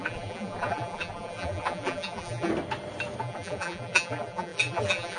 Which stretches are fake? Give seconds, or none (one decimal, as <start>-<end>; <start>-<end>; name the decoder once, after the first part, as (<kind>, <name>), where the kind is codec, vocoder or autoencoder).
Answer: 0.0-2.5 (vocoder, BigVGAN v2); 3.2-5.2